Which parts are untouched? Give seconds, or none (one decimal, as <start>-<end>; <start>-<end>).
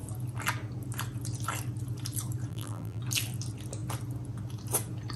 0.0-2.5; 3.0-5.2